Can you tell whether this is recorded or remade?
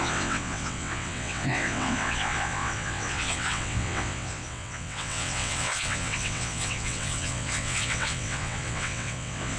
remade